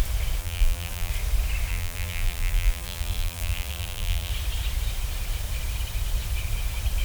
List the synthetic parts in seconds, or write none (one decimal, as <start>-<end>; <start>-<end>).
0.4-1.1; 1.7-4.3